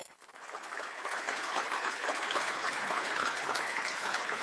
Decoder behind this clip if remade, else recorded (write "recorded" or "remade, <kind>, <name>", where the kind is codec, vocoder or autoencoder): remade, codec, HILCodec